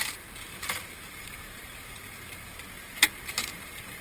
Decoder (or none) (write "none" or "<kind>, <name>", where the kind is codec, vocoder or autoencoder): vocoder, BigVGAN v2